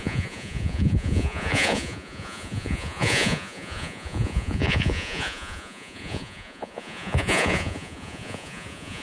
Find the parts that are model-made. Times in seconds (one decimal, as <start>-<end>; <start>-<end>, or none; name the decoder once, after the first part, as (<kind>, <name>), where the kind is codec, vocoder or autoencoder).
0.0-9.0 (vocoder, Vocos)

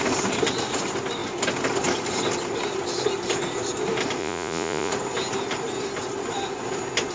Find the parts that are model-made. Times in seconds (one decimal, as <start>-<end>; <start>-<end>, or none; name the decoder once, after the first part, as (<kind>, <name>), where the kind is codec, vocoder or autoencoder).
4.2-4.9 (vocoder, Vocos)

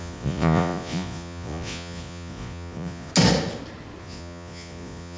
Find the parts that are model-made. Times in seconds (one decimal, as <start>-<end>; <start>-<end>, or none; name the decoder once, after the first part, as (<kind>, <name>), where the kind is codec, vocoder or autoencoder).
0.0-3.1 (vocoder, Vocos); 4.0-5.2

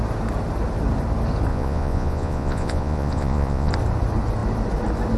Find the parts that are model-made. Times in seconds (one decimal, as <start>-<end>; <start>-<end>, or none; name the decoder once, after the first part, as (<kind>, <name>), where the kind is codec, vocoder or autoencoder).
1.5-3.7 (vocoder, Vocos)